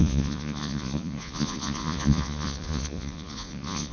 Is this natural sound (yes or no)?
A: no